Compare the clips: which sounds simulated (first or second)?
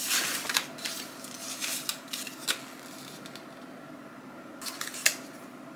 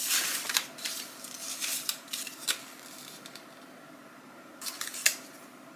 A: second